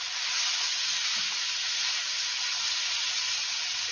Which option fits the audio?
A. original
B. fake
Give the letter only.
A